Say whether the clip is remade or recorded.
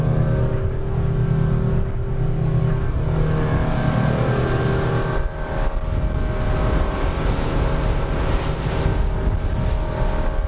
recorded